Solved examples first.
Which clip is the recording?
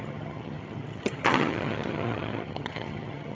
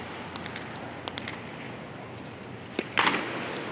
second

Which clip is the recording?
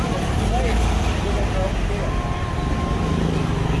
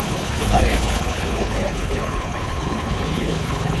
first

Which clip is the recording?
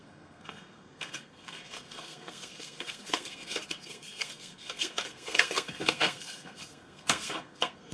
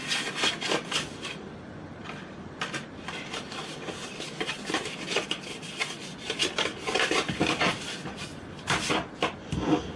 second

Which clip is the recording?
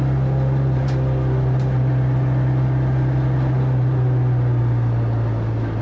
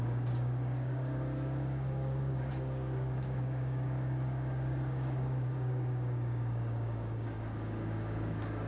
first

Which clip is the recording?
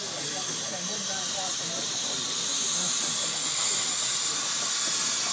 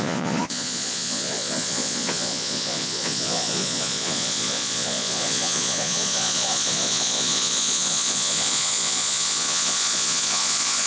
first